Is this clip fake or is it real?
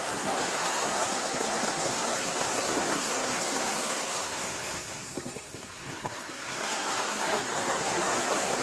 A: fake